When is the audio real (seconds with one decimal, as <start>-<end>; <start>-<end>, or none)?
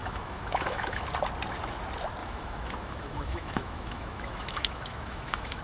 1.0-2.2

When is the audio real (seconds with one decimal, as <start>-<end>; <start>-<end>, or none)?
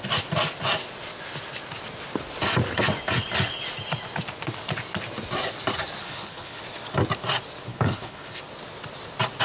0.0-6.0; 6.6-7.7; 8.4-9.4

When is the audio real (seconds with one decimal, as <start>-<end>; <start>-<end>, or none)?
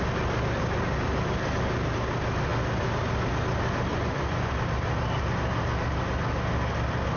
0.0-3.9; 4.5-7.2